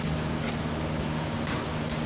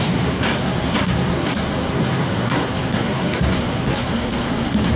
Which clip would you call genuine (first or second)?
first